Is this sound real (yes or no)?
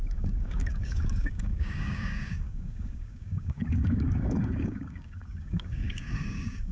no